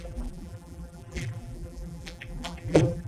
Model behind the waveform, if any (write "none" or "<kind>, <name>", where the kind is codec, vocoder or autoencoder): vocoder, BigVGAN v2